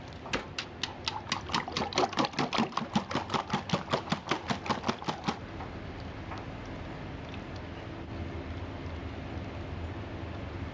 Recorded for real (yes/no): yes